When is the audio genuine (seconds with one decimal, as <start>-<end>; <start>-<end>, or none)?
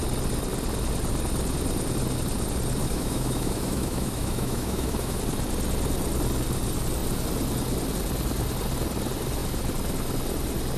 0.0-2.8; 5.2-10.8